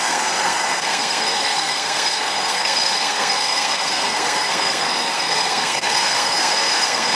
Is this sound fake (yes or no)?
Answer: yes